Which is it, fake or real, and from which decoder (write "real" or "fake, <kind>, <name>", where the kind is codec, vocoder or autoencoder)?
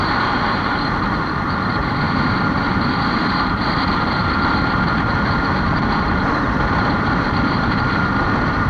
fake, vocoder, BigVGAN v2